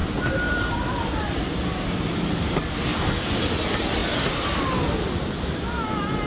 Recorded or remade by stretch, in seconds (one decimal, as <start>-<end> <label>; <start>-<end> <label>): 0.0-1.5 remade; 1.5-6.3 recorded